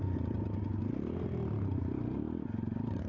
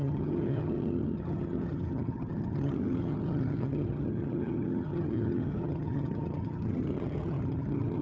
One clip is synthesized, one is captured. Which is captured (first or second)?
first